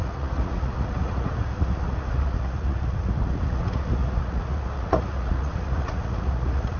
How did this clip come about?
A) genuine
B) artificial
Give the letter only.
B